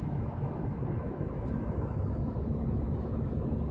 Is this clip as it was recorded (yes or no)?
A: no